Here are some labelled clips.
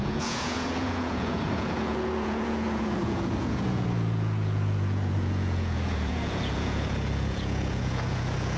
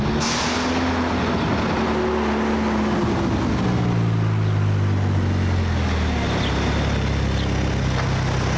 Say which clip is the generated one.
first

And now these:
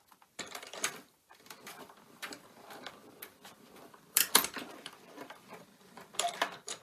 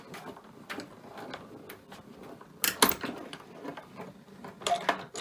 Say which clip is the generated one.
first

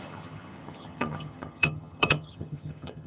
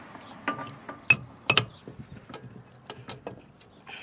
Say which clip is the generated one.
first